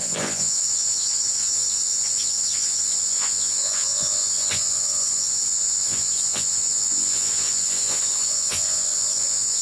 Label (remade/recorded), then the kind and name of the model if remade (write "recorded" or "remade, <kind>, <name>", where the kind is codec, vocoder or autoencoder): remade, vocoder, Vocos